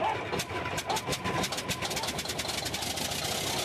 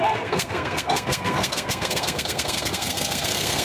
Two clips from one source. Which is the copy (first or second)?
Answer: second